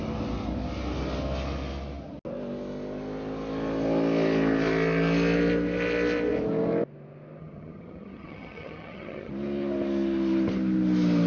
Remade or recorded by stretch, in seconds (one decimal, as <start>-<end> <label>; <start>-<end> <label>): 0.0-7.4 recorded; 7.4-9.3 remade; 9.3-11.3 recorded